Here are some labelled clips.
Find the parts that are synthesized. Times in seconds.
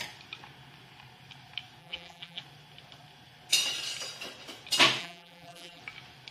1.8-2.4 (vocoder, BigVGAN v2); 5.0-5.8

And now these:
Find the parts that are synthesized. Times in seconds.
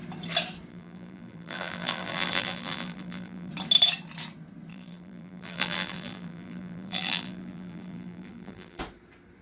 0.7-3.5 (vocoder, BigVGAN v2); 4.7-8.8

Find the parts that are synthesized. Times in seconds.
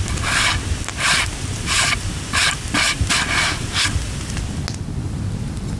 0.9-4.4 (vocoder, BigVGAN v2)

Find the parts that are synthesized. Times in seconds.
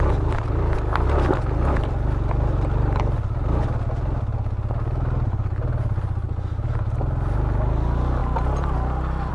none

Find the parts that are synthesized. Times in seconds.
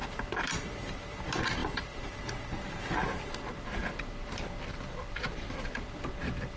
0.0-1.2 (vocoder, BigVGAN v2); 1.6-2.2; 3.8-6.1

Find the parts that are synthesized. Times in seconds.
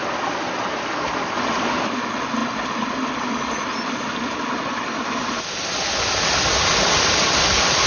none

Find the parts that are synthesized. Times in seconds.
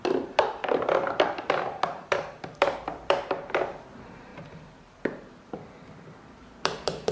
0.0-7.1 (vocoder, BigVGAN v2)